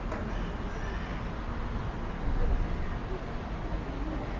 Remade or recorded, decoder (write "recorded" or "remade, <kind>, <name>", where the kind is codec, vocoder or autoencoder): recorded